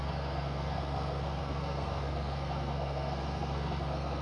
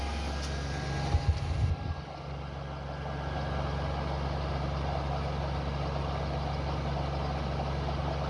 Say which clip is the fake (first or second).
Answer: first